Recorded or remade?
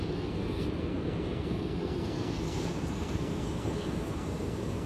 remade